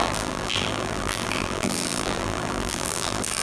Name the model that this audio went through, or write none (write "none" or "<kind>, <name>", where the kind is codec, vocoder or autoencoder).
vocoder, BigVGAN v2